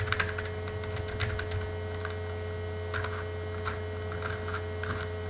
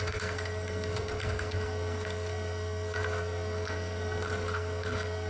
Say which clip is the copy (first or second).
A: second